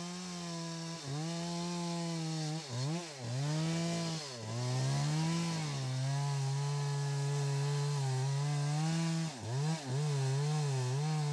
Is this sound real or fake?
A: real